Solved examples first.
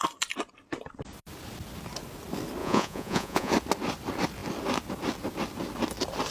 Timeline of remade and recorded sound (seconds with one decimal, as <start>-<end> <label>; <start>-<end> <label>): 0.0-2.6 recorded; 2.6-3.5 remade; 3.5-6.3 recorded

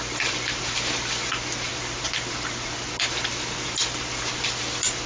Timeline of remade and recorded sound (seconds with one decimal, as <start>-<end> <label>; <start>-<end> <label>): 0.0-5.1 recorded

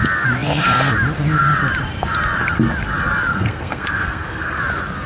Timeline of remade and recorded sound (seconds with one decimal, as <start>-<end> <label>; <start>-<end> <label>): 0.0-3.3 recorded; 3.3-4.6 remade; 4.6-5.1 recorded

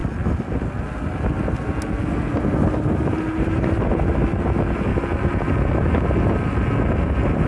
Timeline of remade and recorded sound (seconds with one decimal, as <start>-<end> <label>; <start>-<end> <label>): 0.0-7.5 recorded